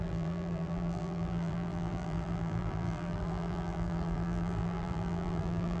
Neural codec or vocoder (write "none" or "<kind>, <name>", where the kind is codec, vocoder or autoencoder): vocoder, BigVGAN v2